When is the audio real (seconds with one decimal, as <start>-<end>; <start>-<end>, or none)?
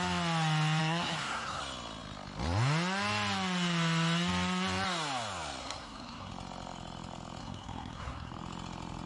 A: 0.0-0.8; 1.6-5.6; 6.3-7.4; 8.3-9.1